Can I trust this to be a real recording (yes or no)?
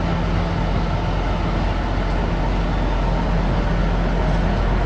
yes